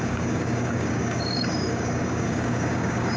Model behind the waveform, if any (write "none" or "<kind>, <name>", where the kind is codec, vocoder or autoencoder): codec, DAC